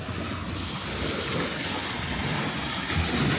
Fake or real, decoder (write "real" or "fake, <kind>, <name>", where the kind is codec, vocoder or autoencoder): real